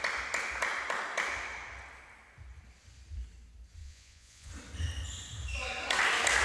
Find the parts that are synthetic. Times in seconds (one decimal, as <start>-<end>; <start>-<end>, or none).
3.8-4.5